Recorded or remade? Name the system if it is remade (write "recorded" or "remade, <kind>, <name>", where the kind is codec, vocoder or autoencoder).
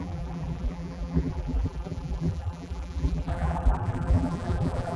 remade, vocoder, BigVGAN v2